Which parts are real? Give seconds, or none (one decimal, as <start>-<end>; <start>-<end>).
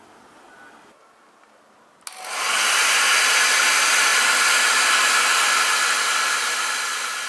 0.0-7.3